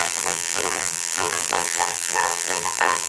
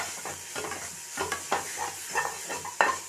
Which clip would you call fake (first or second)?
first